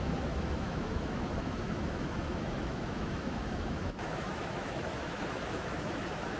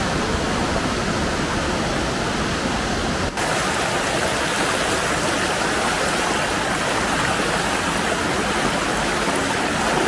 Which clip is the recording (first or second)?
second